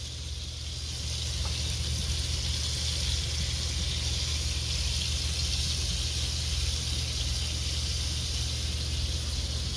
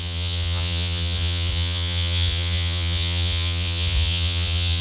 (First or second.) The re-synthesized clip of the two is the second